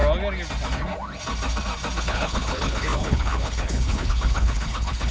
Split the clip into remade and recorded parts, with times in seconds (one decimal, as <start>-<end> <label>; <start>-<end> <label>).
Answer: 0.0-2.0 recorded; 2.0-5.1 remade